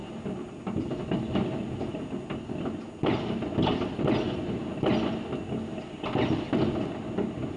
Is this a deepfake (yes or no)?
no